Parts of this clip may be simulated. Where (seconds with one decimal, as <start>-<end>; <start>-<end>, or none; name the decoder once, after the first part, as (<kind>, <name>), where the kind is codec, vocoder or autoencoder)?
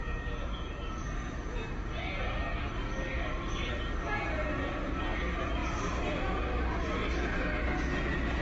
0.0-2.1 (vocoder, Vocos)